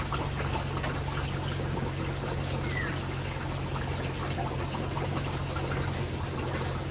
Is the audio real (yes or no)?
yes